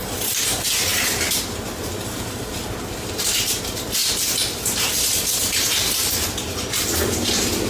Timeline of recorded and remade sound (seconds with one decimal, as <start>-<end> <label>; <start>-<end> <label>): 0.0-2.5 recorded; 2.5-3.2 remade; 3.2-7.7 recorded